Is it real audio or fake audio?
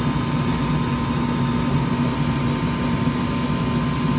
real